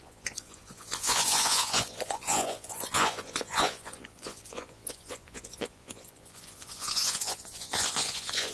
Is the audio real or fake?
fake